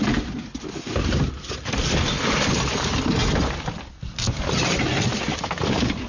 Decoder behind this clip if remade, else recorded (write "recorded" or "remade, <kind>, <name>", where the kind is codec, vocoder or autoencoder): recorded